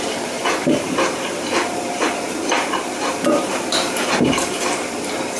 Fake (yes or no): yes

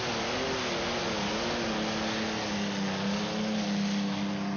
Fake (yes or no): no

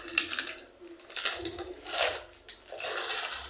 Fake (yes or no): no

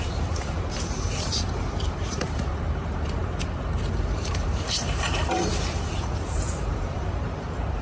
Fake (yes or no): yes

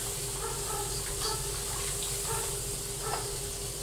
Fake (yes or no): no